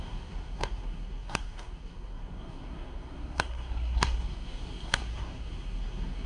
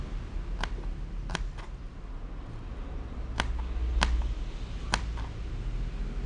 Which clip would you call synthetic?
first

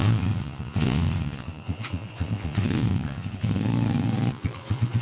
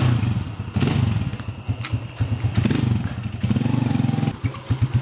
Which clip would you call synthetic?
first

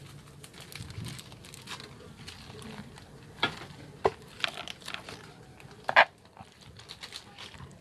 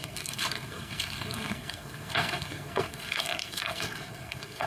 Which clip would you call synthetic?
second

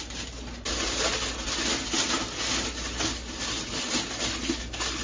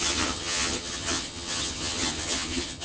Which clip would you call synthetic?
second